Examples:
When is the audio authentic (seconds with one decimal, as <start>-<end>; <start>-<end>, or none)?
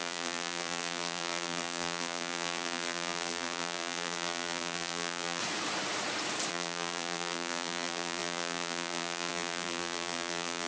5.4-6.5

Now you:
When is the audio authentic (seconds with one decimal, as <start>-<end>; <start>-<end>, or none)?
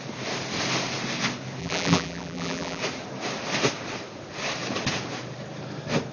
0.0-1.6; 2.8-6.1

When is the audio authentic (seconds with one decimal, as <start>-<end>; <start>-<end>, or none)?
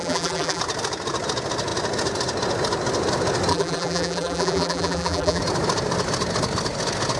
0.6-3.5; 5.4-7.2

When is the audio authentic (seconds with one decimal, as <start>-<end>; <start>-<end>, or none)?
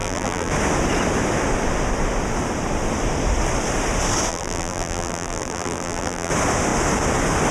0.5-4.3; 6.3-7.5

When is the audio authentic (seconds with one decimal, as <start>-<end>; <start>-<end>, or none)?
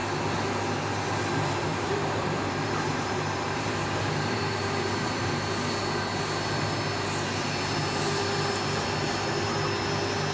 0.0-1.7; 5.7-10.3